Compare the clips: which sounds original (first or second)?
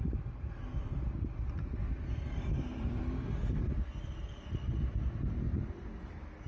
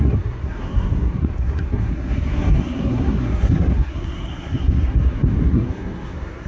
first